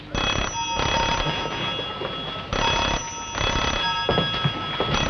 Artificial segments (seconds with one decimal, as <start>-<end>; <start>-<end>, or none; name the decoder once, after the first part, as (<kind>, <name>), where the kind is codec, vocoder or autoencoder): none